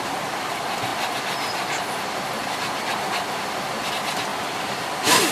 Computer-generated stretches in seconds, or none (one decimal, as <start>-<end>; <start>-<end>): none